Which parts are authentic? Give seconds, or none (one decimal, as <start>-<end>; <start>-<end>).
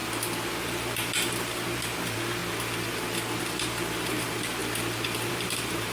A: 0.0-0.6; 2.4-3.4; 4.6-5.3